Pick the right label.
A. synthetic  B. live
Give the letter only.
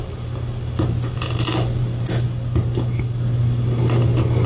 B